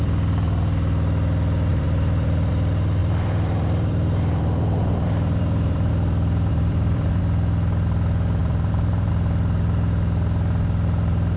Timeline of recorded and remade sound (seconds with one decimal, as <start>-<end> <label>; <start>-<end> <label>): 0.0-1.7 recorded; 1.7-2.5 remade; 2.5-3.0 recorded; 3.0-5.9 remade; 5.9-6.5 recorded; 6.5-7.2 remade; 7.2-8.4 recorded; 8.4-9.1 remade; 9.1-11.4 recorded